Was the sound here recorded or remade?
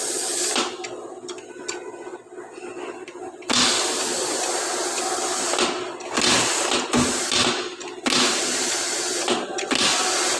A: recorded